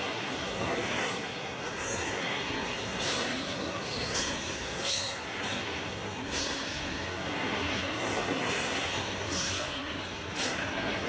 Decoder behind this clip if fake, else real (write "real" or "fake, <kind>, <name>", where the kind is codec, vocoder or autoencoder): fake, codec, SNAC